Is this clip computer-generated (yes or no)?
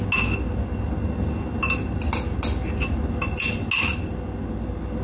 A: no